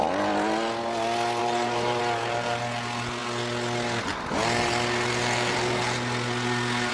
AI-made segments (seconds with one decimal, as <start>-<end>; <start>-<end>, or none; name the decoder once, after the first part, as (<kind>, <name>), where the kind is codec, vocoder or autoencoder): 1.4-2.0 (vocoder, BigVGAN v2)